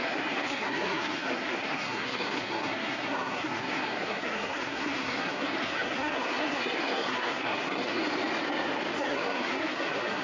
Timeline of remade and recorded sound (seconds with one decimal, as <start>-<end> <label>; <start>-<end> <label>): 0.0-8.0 remade; 8.0-9.0 recorded; 9.0-10.2 remade